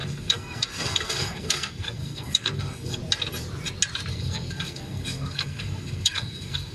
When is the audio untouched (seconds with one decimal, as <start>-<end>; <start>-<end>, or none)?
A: 3.0-4.1